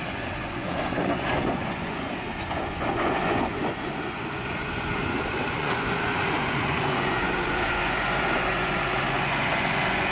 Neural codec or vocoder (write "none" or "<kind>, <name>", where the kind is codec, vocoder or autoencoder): vocoder, Vocos